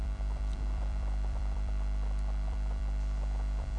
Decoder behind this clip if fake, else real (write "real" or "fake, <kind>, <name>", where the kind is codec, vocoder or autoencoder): fake, vocoder, BigVGAN v2